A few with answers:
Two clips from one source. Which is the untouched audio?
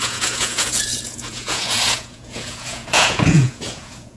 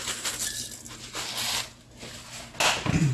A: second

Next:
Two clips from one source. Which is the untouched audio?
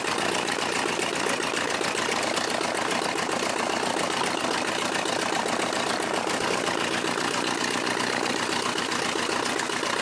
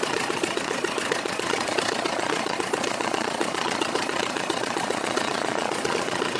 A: first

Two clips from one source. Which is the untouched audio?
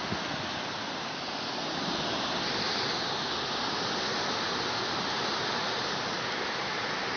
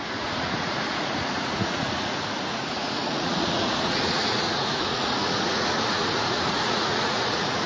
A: first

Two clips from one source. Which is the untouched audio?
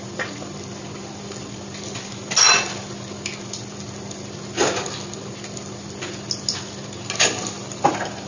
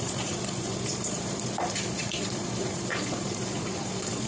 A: first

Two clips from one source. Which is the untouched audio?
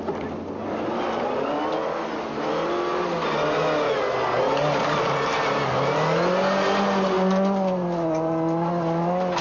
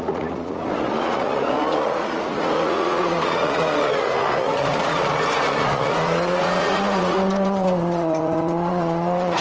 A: first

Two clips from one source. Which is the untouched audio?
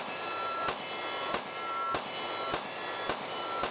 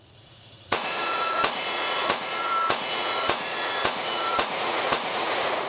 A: first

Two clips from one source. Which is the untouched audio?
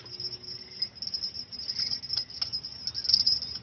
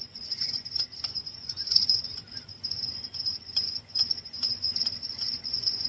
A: first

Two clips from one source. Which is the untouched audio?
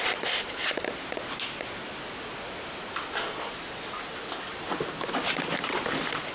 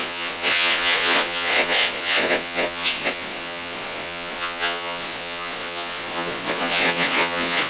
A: first